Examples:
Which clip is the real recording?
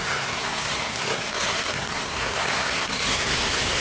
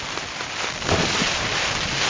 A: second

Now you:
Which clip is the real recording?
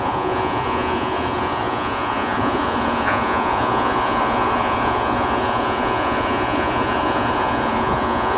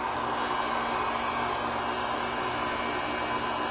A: second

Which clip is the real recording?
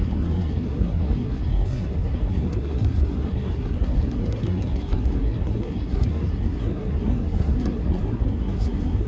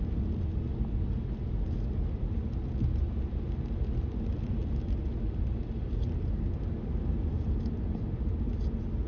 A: second